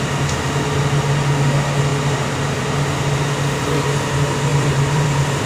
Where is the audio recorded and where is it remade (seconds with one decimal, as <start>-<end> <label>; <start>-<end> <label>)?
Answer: 0.0-4.5 recorded; 4.5-5.5 remade